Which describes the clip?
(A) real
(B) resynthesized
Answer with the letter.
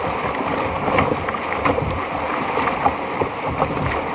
A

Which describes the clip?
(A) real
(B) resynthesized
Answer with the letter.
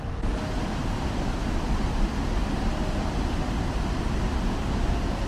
A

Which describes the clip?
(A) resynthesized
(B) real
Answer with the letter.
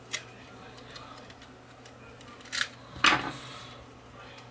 B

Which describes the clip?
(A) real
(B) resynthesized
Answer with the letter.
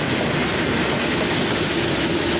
A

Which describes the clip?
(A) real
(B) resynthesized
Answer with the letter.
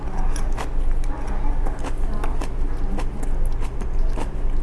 A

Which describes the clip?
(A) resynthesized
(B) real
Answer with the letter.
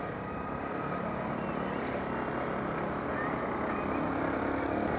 B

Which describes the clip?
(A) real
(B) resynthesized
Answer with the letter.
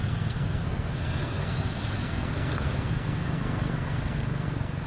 B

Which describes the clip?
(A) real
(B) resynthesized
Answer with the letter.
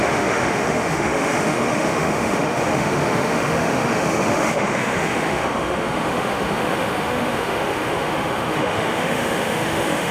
B